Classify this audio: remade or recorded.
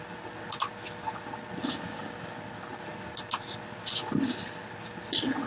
recorded